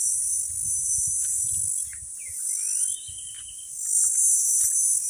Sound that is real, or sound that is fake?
real